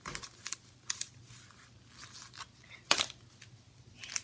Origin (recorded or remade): recorded